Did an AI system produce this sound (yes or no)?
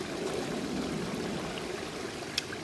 no